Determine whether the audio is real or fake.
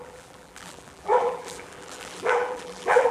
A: fake